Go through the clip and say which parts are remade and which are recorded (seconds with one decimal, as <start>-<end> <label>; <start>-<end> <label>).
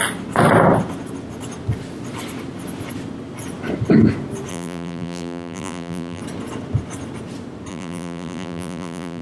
0.0-4.5 recorded; 4.5-6.2 remade; 6.2-7.7 recorded; 7.7-9.2 remade